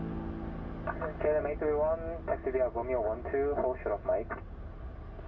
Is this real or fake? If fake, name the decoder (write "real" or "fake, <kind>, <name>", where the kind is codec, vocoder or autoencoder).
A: real